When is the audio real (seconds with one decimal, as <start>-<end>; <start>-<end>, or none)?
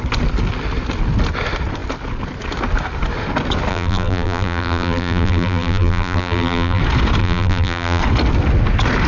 0.0-3.7; 6.8-7.2; 8.0-9.1